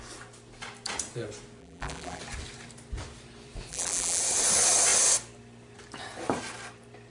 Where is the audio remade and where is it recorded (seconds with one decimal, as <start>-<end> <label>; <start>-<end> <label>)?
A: 0.0-1.6 recorded; 1.6-2.2 remade; 2.2-3.7 recorded; 3.7-4.2 remade; 4.2-7.1 recorded